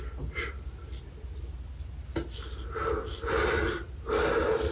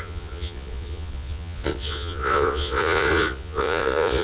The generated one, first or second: second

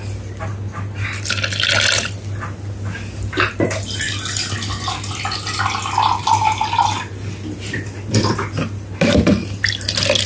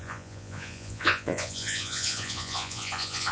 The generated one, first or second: second